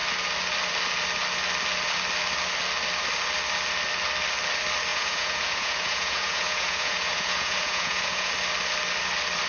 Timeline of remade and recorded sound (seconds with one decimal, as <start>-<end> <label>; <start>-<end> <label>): 0.0-4.9 recorded; 4.9-8.3 remade; 8.3-9.5 recorded